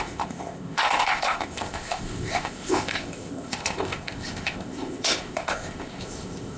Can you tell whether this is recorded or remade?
remade